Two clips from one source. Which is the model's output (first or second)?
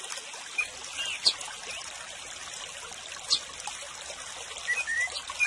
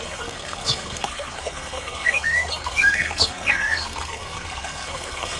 second